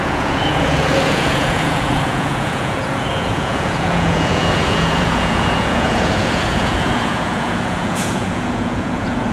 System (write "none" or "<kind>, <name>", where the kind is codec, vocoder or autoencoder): vocoder, Vocos